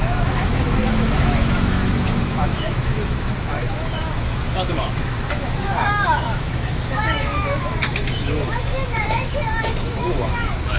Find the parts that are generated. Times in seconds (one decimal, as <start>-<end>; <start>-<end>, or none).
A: 0.0-10.8